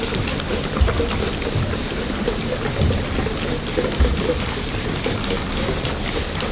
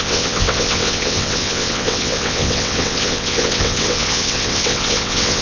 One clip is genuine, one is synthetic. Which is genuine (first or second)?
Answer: first